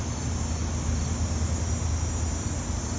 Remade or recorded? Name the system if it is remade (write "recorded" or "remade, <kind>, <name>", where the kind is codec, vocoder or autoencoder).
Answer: recorded